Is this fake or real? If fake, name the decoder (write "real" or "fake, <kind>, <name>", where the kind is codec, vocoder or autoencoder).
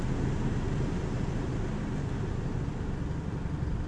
real